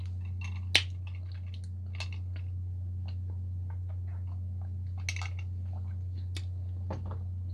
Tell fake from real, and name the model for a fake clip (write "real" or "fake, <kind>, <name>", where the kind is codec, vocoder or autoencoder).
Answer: real